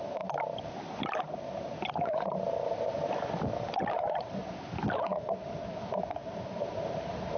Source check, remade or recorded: recorded